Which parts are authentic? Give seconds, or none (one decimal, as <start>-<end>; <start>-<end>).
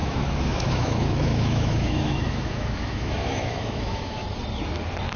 4.2-5.2